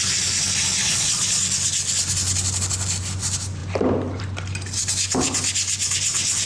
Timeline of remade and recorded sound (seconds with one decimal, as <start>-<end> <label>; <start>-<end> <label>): 0.0-0.8 recorded; 0.8-1.4 remade; 1.4-6.5 recorded